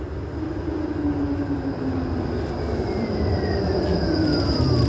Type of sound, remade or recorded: remade